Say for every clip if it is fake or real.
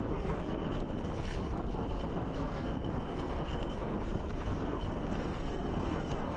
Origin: fake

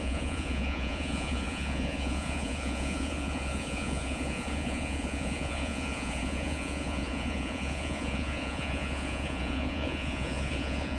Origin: fake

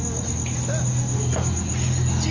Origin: real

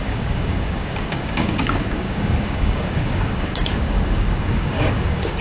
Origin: fake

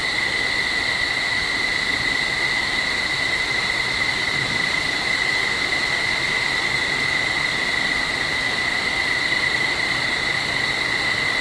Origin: real